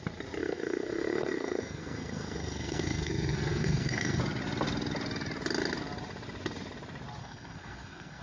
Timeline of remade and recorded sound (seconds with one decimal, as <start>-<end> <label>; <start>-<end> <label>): 0.0-0.4 recorded; 0.4-4.2 remade; 4.2-7.2 recorded; 7.2-8.2 remade